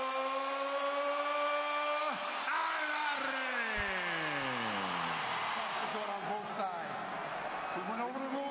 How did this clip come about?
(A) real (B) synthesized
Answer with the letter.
A